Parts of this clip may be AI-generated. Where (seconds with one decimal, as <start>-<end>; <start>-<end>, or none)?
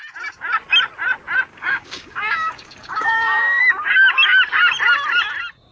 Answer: 1.5-3.6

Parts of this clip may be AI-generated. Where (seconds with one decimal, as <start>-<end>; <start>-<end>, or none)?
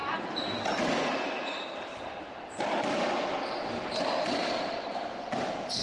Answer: none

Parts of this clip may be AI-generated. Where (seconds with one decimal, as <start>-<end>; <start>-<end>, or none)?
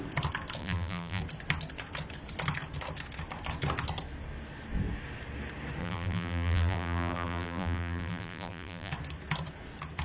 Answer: 0.6-1.2; 5.8-8.9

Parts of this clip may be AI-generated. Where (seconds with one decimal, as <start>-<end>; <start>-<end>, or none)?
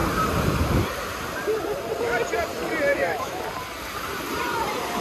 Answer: 2.9-3.4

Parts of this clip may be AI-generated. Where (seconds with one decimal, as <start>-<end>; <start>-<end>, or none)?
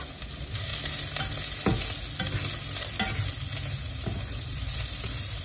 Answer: 0.0-0.7; 3.9-5.4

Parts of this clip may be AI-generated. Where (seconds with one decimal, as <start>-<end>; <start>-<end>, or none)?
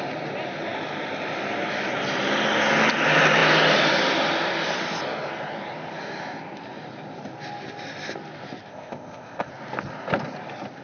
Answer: 8.7-9.5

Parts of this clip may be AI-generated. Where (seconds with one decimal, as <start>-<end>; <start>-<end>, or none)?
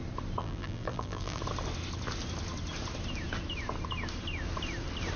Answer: 0.4-1.4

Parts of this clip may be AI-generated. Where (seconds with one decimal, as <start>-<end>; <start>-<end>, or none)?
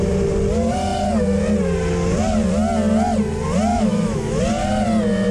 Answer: 3.7-4.4